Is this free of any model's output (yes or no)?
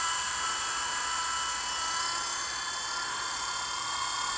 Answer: yes